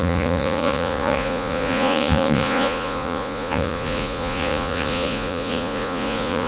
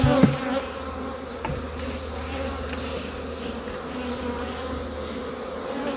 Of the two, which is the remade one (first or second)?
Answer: first